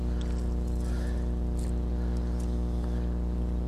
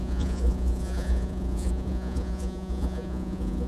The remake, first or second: second